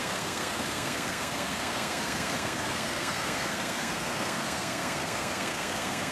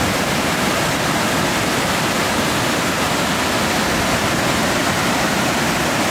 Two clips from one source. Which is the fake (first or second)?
first